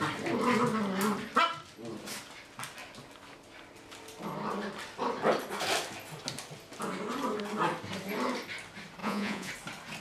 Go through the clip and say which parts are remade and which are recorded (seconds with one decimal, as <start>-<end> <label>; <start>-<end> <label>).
0.0-9.0 recorded; 9.0-9.5 remade; 9.5-10.0 recorded